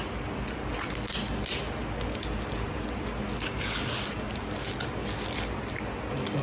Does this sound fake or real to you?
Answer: real